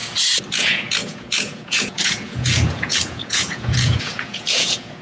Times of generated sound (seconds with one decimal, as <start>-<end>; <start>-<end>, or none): 0.5-5.0